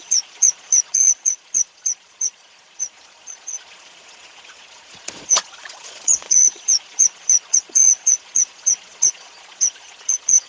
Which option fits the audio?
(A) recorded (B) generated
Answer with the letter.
B